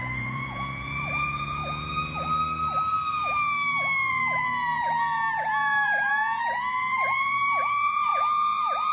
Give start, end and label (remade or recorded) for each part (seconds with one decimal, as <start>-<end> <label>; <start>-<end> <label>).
0.0-1.6 remade; 1.6-4.1 recorded; 4.1-8.9 remade